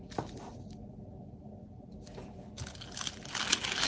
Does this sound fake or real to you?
real